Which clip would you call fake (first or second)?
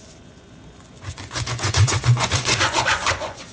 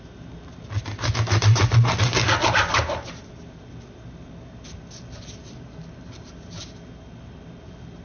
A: first